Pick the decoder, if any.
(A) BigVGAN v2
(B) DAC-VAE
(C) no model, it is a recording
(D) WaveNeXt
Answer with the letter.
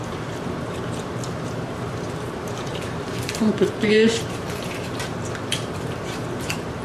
A